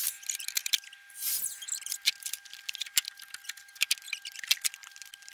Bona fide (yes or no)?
no